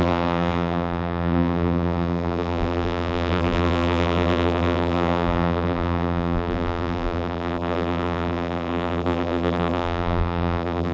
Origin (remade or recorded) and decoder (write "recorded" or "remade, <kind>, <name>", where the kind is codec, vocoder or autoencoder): remade, vocoder, BigVGAN v2